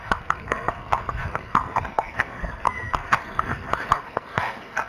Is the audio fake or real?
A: fake